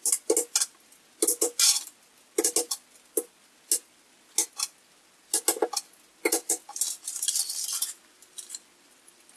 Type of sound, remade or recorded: recorded